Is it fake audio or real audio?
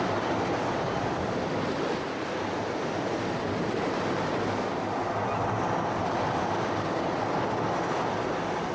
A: real